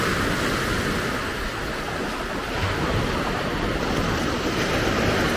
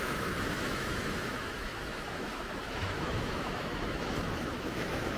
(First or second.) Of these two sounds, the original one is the first